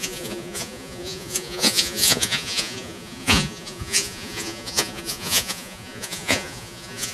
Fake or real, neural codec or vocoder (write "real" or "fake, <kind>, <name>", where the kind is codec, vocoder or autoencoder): fake, vocoder, Vocos